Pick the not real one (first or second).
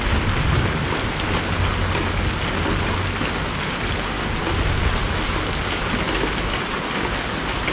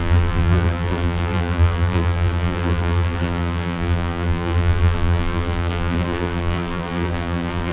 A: second